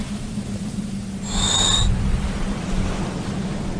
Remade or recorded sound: recorded